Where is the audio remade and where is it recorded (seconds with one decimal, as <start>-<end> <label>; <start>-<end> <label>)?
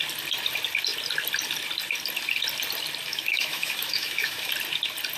0.0-3.1 recorded; 3.1-4.5 remade; 4.5-5.2 recorded